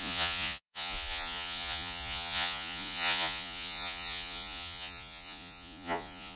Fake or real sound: fake